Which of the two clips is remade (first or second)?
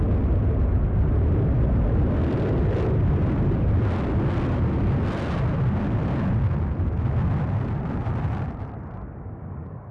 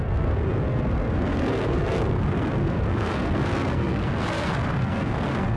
second